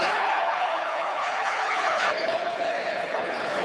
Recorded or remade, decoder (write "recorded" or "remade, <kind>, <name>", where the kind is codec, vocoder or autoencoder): remade, codec, HILCodec